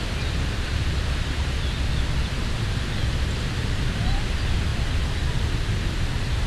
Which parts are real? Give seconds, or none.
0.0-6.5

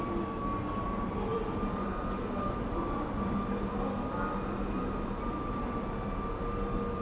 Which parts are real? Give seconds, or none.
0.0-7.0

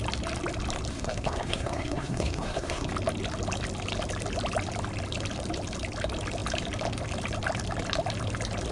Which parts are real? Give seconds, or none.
0.0-0.9; 2.9-8.7

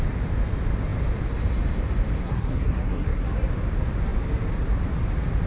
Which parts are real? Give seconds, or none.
0.0-2.2; 3.3-5.5

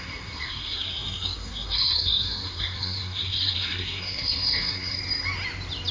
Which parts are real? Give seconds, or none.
5.0-5.9

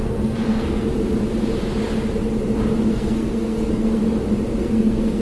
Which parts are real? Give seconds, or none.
0.9-2.9; 4.0-4.6